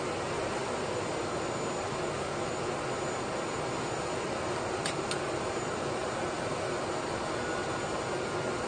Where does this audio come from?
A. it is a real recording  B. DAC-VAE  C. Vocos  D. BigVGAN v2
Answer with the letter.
A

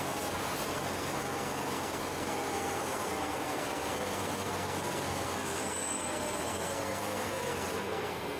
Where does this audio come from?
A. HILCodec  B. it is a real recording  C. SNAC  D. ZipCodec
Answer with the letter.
C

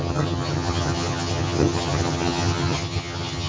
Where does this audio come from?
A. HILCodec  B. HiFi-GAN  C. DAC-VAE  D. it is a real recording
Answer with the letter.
B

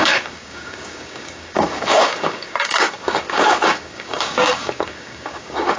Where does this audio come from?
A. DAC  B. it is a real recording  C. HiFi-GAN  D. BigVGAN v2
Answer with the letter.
A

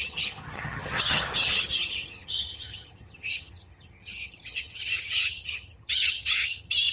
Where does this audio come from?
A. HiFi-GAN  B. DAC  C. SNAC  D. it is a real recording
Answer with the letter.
A